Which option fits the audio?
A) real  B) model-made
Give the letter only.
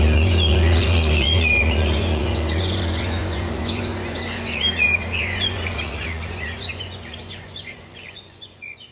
B